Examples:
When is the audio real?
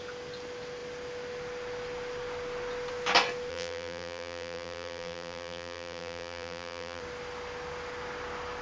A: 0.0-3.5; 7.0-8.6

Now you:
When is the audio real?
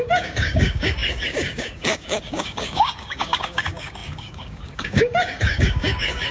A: none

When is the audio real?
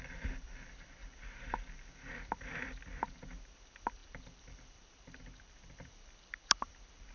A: none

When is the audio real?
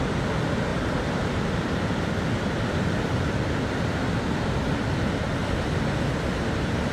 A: 0.0-0.7; 1.2-6.9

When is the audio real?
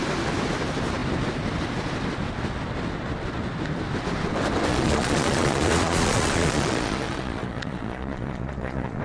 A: 0.0-4.7